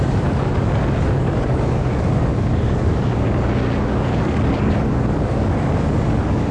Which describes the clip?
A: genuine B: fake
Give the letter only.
B